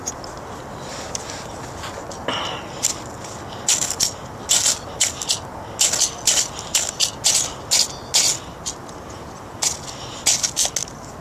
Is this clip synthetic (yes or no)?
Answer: no